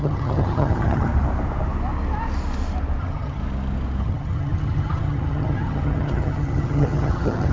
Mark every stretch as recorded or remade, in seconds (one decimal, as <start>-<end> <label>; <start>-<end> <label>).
0.0-1.1 remade; 1.1-3.0 recorded; 3.0-3.4 remade; 3.4-4.0 recorded; 4.0-7.5 remade